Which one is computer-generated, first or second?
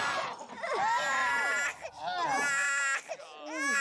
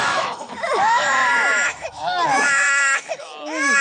second